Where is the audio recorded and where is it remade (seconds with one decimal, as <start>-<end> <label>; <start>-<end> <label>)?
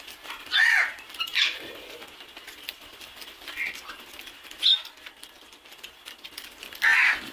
0.0-1.3 recorded; 1.3-3.8 remade; 3.8-7.3 recorded